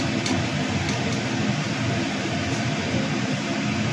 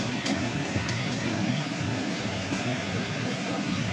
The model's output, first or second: second